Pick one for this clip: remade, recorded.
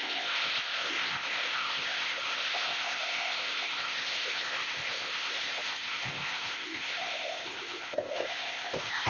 remade